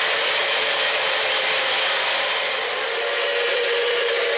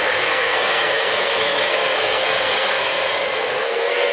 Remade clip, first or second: second